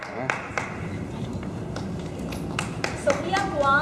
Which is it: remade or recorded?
recorded